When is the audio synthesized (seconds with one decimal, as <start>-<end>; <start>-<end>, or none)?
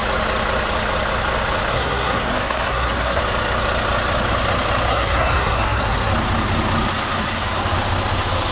1.7-3.2; 4.9-6.1